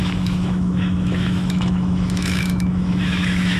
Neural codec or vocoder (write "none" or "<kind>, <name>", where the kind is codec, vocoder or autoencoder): autoencoder, DAC-VAE